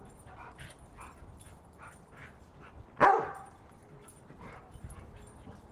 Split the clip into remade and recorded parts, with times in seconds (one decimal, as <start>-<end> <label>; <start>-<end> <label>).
0.0-5.7 recorded